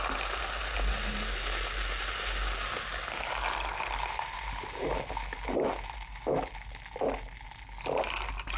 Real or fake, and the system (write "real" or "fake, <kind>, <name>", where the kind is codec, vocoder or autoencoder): real